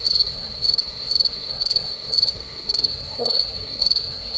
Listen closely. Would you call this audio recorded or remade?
remade